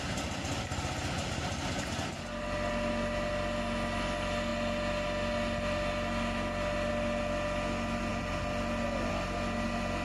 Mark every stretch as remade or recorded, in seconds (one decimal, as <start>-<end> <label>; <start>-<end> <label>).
0.0-10.0 recorded